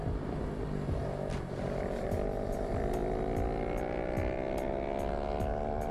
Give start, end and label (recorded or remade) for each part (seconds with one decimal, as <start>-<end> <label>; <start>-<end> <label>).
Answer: 0.0-5.9 recorded